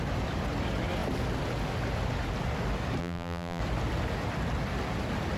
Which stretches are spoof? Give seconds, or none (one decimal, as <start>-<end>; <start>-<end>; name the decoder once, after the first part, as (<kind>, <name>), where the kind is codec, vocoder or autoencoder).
3.0-3.6 (vocoder, BigVGAN v2)